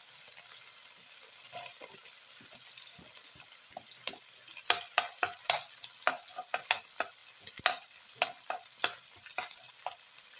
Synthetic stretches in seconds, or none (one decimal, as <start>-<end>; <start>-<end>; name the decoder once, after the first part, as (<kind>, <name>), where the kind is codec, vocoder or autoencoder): none